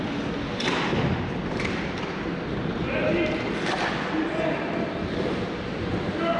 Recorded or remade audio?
recorded